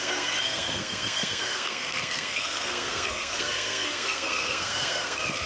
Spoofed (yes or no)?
yes